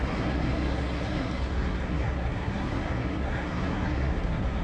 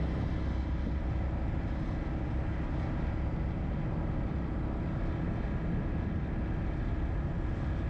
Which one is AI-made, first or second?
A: first